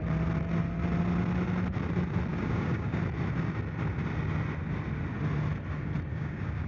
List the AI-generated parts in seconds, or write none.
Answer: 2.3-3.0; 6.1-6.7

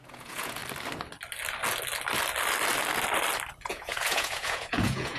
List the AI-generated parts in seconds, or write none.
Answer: 0.0-0.6; 3.7-5.2